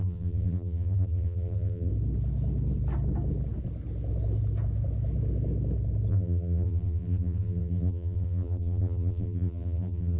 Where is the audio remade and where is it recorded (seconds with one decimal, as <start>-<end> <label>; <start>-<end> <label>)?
0.0-1.9 remade; 1.9-6.1 recorded; 6.1-10.2 remade